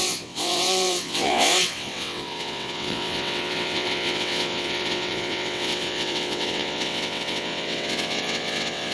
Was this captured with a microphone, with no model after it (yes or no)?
no